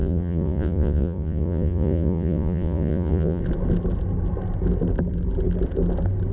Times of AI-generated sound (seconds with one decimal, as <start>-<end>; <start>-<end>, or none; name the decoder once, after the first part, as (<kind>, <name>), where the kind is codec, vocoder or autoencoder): 0.0-3.4 (vocoder, Vocos)